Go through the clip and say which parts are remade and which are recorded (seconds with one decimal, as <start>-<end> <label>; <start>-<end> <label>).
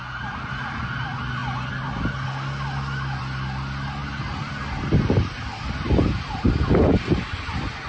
0.0-7.9 recorded